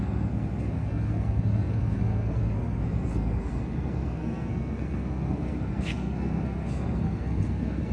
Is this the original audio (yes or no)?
no